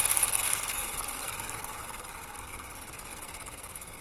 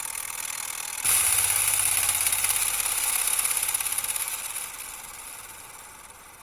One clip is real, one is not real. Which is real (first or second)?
second